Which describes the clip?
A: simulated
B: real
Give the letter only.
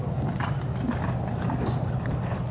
B